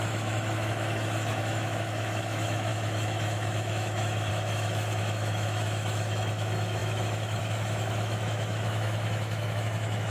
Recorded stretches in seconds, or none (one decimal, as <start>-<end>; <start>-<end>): none